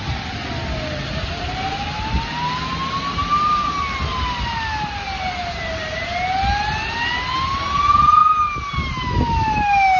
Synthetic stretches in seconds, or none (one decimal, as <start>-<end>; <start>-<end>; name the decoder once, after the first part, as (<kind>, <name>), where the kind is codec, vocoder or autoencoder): none